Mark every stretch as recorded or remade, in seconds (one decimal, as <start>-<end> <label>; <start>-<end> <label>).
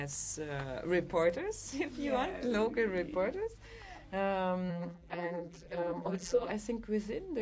0.0-4.7 recorded; 4.7-6.5 remade; 6.5-7.4 recorded